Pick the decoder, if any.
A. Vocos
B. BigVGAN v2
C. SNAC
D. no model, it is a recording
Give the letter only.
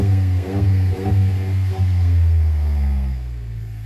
C